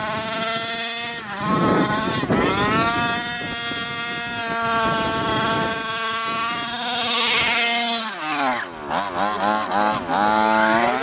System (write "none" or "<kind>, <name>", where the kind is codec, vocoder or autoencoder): none